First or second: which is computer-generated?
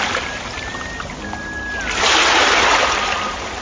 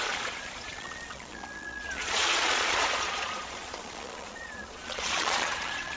second